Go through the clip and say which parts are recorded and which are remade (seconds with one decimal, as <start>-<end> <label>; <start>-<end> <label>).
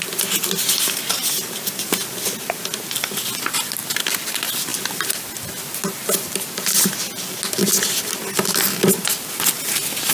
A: 0.0-10.1 recorded